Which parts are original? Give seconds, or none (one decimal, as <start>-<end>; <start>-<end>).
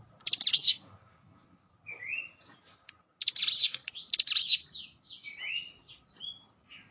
0.0-0.5; 1.7-6.9